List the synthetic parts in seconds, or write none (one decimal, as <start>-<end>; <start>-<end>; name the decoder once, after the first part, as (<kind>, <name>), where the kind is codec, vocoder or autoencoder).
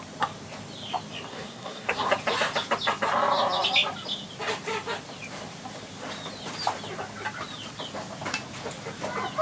1.3-2.1 (codec, SNAC)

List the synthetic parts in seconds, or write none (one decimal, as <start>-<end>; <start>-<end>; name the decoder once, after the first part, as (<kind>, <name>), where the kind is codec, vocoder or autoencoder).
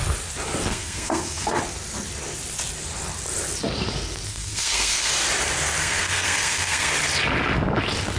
0.7-1.6 (codec, SNAC); 4.3-5.1; 5.8-6.9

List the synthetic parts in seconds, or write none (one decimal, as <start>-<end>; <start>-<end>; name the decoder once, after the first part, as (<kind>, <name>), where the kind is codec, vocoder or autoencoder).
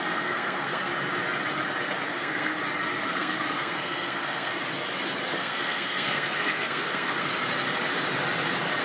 0.0-0.9 (codec, SNAC); 2.1-2.5; 3.1-4.5; 5.4-7.3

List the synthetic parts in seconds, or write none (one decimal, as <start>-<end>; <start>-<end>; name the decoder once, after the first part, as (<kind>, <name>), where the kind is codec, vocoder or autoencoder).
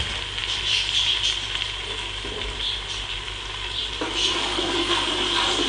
4.5-5.1 (codec, SNAC)